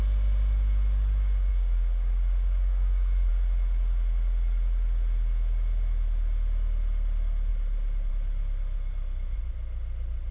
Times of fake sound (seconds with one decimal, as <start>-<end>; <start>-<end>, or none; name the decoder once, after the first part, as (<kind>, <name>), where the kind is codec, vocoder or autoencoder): 1.5-3.3 (codec, DAC)

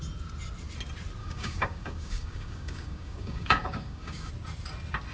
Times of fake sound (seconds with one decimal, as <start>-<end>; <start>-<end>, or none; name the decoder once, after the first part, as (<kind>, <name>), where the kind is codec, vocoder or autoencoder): 1.2-4.3 (codec, DAC)